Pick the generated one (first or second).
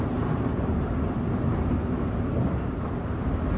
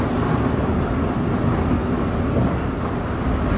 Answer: first